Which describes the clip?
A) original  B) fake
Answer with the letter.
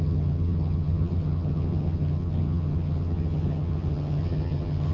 B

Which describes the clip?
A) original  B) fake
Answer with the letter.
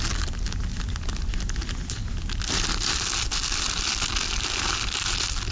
A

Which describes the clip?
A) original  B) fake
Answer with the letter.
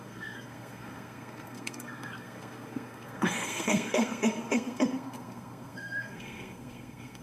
B